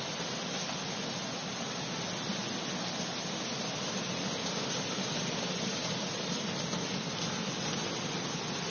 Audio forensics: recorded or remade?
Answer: recorded